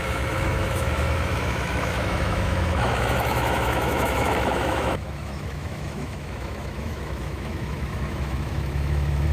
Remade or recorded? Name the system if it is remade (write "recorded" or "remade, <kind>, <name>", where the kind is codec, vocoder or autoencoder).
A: remade, autoencoder, DAC-VAE